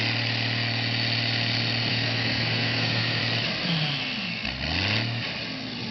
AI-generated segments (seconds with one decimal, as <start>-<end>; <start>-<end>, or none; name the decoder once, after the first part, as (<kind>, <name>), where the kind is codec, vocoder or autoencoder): 1.9-3.2 (codec, SNAC)